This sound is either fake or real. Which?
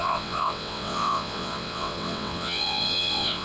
fake